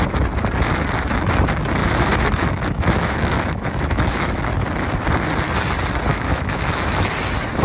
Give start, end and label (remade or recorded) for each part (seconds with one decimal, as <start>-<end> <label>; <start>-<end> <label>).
0.0-1.8 recorded; 1.8-4.3 remade; 4.3-6.1 recorded; 6.1-7.1 remade; 7.1-7.6 recorded

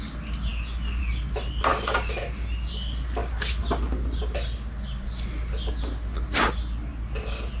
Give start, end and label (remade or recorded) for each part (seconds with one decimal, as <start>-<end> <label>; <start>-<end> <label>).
0.0-7.6 recorded

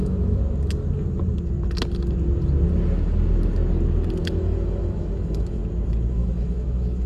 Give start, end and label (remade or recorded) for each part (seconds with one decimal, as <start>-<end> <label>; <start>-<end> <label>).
0.0-0.4 remade; 0.4-4.2 recorded; 4.2-5.6 remade; 5.6-6.1 recorded; 6.1-7.1 remade

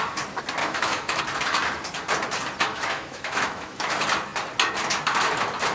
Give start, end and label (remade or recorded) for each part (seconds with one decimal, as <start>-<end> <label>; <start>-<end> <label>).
0.0-0.6 recorded; 0.6-1.2 remade; 1.2-2.7 recorded; 2.7-3.9 remade; 3.9-5.7 recorded

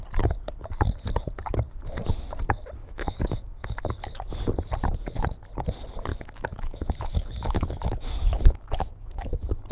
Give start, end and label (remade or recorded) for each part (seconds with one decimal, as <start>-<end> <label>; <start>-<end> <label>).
0.0-2.8 recorded; 2.8-3.8 remade; 3.8-6.1 recorded; 6.1-9.7 remade

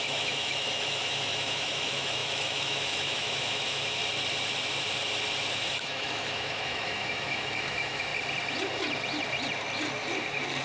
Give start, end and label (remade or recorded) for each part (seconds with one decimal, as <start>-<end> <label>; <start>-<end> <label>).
0.0-4.0 remade; 4.0-5.5 recorded; 5.5-8.1 remade; 8.1-10.6 recorded

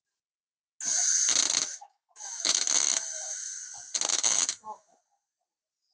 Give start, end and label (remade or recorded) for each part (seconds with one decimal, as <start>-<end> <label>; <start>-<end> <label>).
0.0-1.6 recorded; 1.6-3.5 remade; 3.5-4.1 recorded; 4.1-5.0 remade; 5.0-5.9 recorded

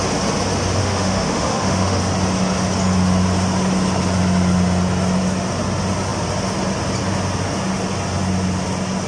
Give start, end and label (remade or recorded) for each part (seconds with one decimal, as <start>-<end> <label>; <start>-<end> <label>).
0.0-0.8 recorded; 0.8-2.0 remade; 2.0-9.1 recorded